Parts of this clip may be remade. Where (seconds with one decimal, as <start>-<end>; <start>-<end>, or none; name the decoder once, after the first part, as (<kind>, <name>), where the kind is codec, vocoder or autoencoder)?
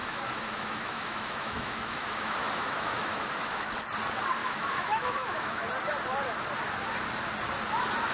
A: 0.0-3.7 (autoencoder, DAC-VAE); 4.4-5.6